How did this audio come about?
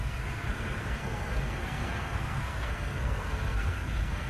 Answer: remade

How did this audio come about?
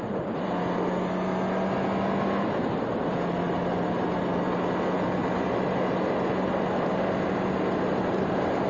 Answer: recorded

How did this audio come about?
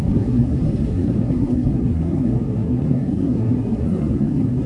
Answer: remade